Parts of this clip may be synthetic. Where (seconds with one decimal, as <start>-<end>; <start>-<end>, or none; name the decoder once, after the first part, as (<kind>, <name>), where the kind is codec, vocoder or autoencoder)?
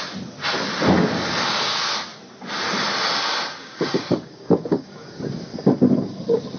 3.6-5.2 (codec, DAC)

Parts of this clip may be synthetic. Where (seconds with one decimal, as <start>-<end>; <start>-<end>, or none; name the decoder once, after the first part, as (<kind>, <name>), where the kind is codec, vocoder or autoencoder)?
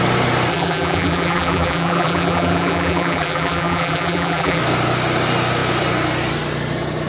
0.5-4.6 (vocoder, BigVGAN v2)